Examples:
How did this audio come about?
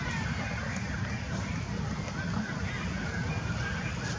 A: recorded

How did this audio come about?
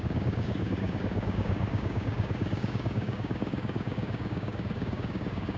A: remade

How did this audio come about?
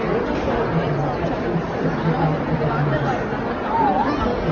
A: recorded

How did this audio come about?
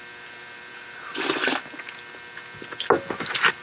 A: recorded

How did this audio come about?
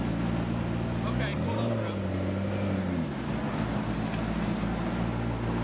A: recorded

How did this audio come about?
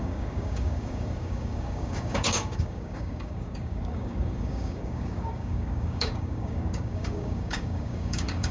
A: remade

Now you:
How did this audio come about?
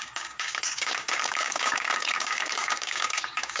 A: remade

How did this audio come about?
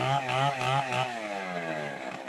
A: remade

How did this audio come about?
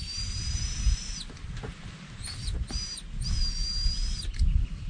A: recorded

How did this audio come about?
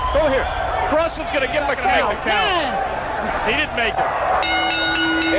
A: recorded